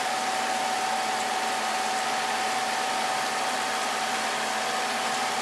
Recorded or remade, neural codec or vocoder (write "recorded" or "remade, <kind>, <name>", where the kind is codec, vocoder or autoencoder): recorded